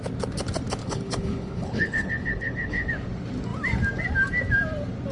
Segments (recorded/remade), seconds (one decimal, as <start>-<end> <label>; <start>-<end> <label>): 0.0-0.8 recorded; 0.8-2.9 remade; 2.9-5.1 recorded

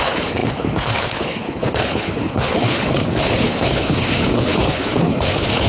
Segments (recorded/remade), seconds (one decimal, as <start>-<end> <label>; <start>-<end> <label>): 0.0-5.7 remade

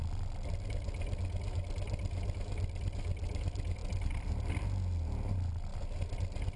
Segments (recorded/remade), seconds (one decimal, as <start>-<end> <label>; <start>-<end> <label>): 0.0-6.6 recorded

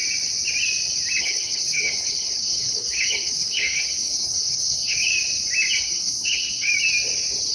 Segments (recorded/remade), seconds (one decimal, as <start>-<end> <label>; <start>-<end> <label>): 0.0-1.2 recorded; 1.2-5.1 remade; 5.1-5.8 recorded; 5.8-6.7 remade; 6.7-7.5 recorded

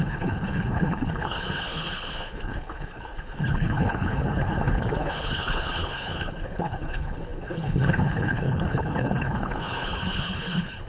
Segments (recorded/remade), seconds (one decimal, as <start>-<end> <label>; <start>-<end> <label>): 0.0-10.9 remade

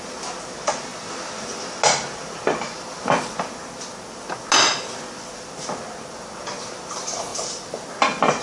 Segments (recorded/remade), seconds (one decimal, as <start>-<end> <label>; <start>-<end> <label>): 0.0-8.4 recorded

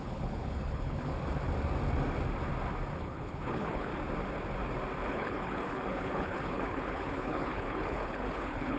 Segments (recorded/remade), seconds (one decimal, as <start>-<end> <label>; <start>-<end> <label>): 0.0-1.1 remade; 1.1-3.0 recorded; 3.0-3.9 remade; 3.9-5.1 recorded; 5.1-8.8 remade

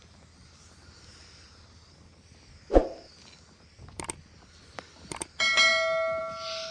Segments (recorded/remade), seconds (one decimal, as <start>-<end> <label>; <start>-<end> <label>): 0.0-6.7 recorded